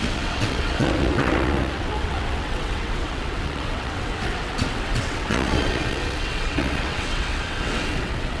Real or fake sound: fake